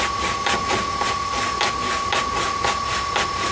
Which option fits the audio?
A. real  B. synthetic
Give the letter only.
A